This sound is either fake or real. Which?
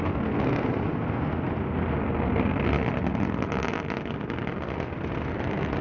real